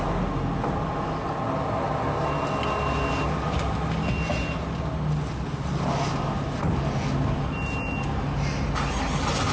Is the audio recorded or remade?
recorded